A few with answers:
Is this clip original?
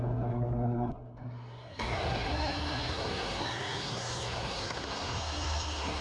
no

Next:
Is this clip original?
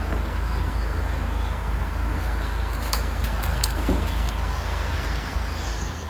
no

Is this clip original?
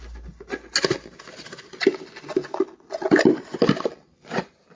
yes